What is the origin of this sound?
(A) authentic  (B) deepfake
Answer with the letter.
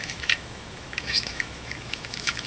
B